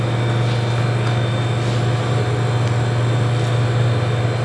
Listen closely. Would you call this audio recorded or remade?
recorded